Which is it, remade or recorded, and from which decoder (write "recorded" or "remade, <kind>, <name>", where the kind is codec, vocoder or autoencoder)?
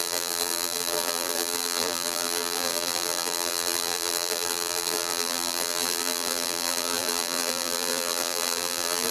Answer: remade, vocoder, BigVGAN v2